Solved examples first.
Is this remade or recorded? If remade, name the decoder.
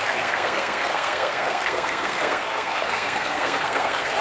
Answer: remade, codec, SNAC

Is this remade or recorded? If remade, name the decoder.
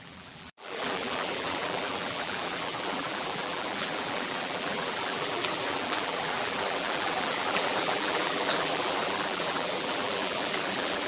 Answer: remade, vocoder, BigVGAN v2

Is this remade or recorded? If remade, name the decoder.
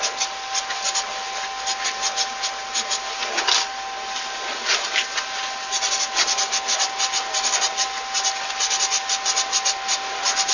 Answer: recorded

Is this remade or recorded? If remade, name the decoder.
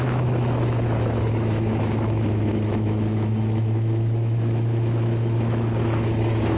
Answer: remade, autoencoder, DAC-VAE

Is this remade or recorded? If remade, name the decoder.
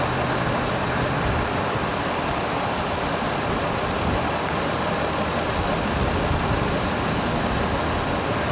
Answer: recorded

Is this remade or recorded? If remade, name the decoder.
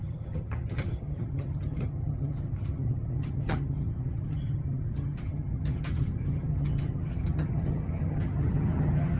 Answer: remade, vocoder, HiFi-GAN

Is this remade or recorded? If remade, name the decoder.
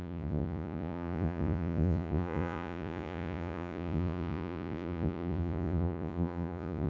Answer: remade, vocoder, Vocos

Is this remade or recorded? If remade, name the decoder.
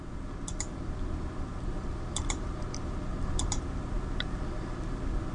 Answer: recorded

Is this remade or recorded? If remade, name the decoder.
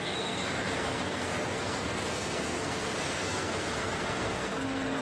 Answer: remade, codec, SNAC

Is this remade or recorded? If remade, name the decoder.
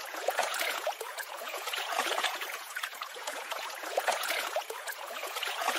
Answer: remade, vocoder, Vocos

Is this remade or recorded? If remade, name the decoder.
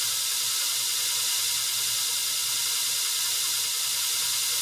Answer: recorded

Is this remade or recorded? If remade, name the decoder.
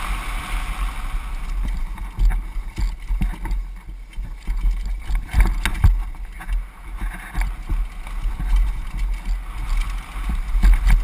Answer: recorded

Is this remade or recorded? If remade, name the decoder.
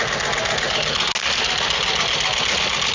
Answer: recorded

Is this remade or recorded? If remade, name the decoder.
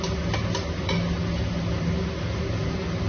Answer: recorded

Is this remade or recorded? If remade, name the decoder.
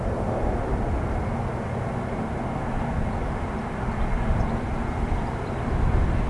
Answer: recorded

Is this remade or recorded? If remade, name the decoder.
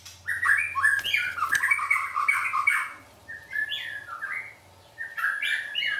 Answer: recorded